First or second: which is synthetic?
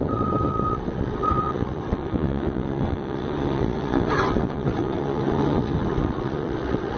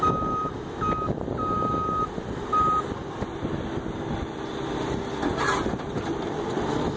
first